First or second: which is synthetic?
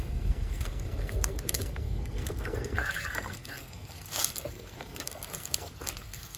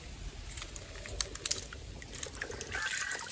first